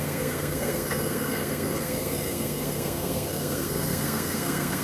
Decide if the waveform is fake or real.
fake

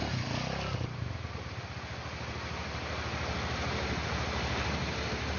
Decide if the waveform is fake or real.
real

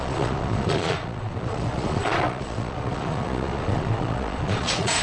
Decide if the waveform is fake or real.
fake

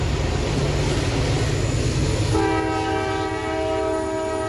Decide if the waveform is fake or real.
real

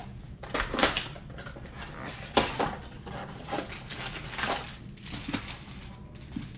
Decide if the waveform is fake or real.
real